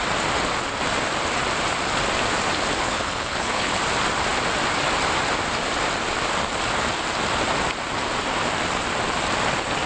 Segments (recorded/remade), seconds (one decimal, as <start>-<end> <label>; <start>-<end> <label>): 0.0-2.8 recorded; 2.8-3.8 remade; 3.8-9.9 recorded